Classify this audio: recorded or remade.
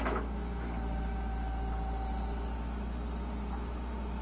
recorded